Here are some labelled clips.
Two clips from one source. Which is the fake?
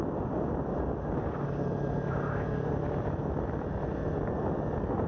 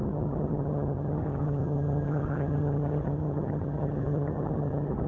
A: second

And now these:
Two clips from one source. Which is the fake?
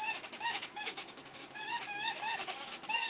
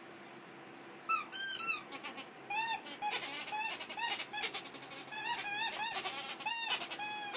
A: first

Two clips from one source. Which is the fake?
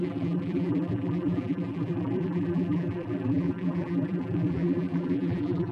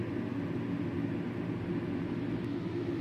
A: first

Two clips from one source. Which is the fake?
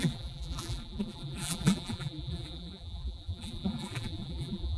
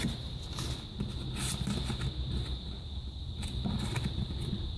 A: first